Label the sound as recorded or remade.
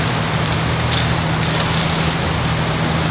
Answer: recorded